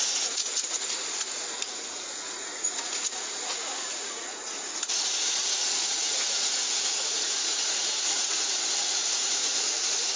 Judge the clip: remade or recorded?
remade